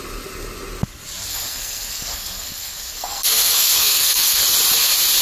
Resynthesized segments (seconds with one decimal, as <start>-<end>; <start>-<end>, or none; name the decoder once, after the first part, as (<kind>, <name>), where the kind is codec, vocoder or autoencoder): 1.3-4.4 (codec, SNAC)

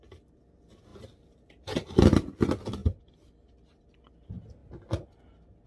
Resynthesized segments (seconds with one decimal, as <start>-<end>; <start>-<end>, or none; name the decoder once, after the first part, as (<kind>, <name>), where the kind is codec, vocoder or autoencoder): none

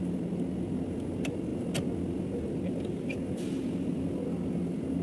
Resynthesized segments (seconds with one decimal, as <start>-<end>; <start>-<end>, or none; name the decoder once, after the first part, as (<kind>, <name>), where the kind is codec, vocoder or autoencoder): none

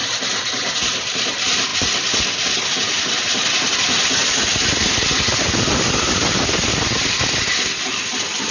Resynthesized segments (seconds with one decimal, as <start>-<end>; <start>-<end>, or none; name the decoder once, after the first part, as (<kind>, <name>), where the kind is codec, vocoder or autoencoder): none

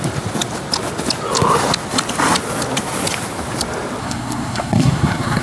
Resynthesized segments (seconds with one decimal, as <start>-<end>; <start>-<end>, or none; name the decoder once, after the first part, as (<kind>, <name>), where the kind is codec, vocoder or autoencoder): 4.0-5.4 (codec, SNAC)